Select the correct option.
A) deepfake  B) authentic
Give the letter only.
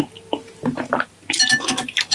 B